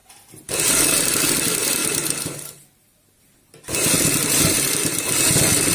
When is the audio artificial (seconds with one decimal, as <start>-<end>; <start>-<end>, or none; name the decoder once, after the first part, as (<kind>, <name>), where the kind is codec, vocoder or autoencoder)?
none